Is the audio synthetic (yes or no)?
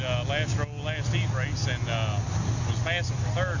no